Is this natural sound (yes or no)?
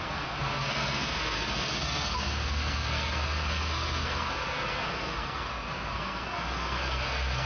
no